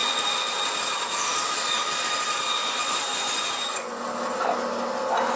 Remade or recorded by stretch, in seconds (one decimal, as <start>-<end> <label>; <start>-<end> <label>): 0.0-2.6 recorded; 2.6-4.0 remade; 4.0-5.4 recorded